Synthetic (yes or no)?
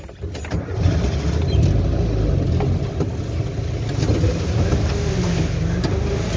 no